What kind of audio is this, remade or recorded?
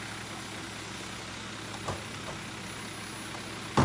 recorded